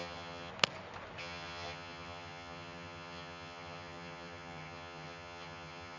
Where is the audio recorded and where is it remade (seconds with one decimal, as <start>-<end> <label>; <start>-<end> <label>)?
0.0-0.5 remade; 0.5-1.2 recorded; 1.2-6.0 remade